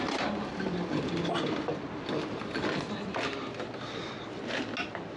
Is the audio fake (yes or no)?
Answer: no